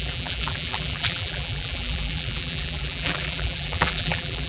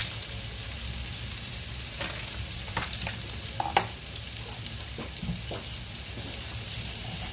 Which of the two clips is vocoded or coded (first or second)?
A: first